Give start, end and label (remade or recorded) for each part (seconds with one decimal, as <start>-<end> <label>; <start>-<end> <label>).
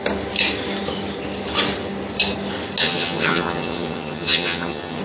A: 0.0-2.8 recorded; 2.8-5.0 remade